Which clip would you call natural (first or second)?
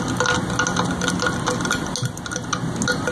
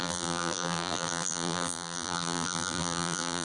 first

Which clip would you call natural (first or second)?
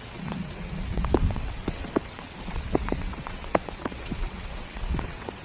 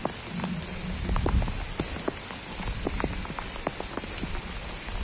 second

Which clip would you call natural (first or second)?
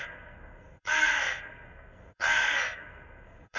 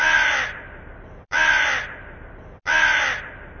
second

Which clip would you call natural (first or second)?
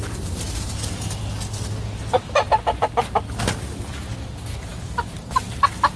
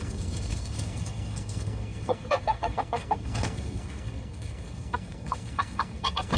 first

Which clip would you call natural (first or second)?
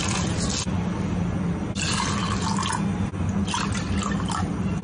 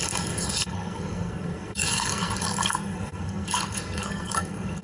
first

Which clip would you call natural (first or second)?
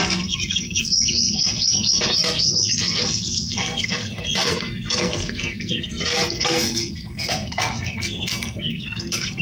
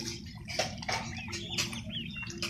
second